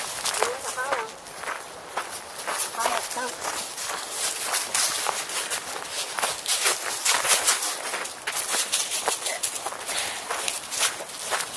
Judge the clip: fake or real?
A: real